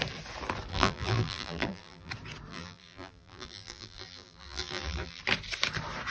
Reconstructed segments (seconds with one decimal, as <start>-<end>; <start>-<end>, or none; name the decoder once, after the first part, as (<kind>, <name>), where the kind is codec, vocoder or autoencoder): 0.7-2.1 (vocoder, BigVGAN v2); 2.5-5.2